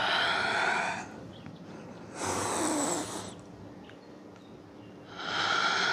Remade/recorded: recorded